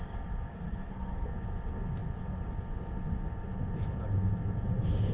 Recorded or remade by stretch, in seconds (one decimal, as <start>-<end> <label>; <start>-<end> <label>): 0.0-0.5 recorded; 0.5-1.3 remade; 1.3-5.1 recorded